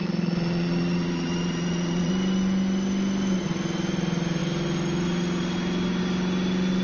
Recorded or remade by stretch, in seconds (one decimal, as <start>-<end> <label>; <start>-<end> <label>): 0.0-2.1 remade; 2.1-6.8 recorded